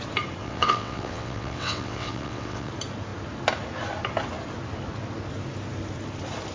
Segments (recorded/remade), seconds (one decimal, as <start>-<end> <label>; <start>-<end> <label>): 0.0-0.4 recorded; 0.4-2.7 remade; 2.7-6.5 recorded